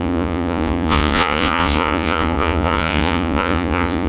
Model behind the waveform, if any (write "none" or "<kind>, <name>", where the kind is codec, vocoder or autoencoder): vocoder, Vocos